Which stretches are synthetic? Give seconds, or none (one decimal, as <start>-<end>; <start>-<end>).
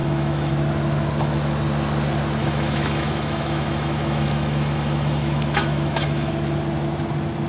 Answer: 0.0-0.5; 2.4-6.3